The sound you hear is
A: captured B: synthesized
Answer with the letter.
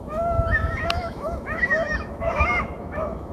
B